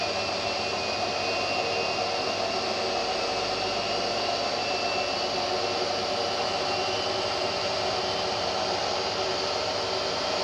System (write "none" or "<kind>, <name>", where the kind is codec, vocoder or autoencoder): none